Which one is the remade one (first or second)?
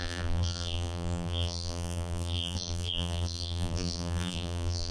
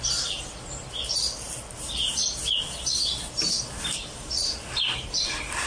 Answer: first